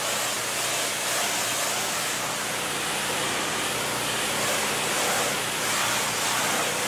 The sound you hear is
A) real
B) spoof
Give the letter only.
A